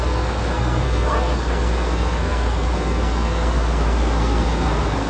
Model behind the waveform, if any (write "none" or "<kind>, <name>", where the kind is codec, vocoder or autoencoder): codec, SNAC